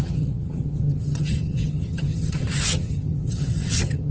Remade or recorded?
remade